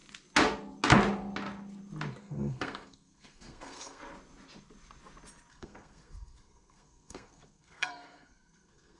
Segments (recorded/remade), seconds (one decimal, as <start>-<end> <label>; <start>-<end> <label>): 0.0-2.2 recorded; 2.2-4.0 remade; 4.0-5.5 recorded; 5.5-9.0 remade